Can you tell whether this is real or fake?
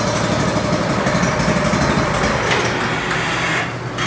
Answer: real